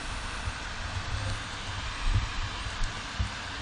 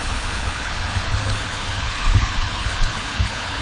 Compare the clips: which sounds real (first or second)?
first